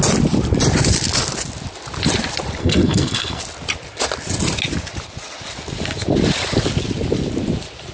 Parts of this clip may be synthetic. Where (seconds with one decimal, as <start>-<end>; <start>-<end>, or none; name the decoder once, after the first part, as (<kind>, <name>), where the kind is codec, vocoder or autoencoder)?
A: 2.6-3.4 (codec, SNAC)